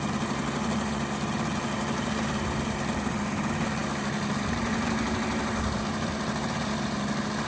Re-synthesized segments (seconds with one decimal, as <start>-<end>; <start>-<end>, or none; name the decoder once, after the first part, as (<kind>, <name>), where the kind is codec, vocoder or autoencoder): none